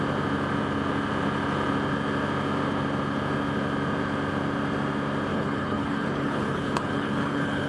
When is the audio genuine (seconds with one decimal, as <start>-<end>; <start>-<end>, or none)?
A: 0.0-5.3